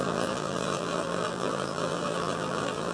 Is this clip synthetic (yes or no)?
yes